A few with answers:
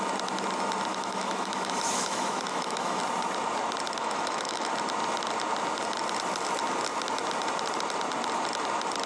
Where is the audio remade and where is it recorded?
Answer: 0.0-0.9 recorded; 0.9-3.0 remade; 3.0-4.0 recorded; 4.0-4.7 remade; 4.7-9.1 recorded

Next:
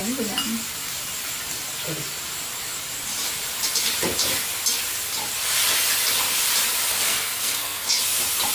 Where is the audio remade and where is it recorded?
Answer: 0.0-6.9 recorded; 6.9-7.9 remade; 7.9-8.5 recorded

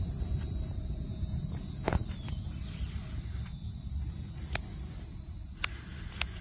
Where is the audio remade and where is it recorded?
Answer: 0.0-6.4 recorded